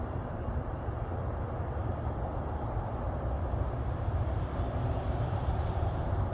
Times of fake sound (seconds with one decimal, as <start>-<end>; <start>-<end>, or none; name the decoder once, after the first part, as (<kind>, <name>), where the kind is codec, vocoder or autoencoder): 0.0-1.9 (vocoder, BigVGAN v2); 4.5-6.3